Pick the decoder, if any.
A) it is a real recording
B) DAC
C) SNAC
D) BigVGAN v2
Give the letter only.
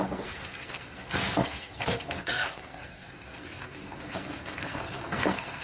C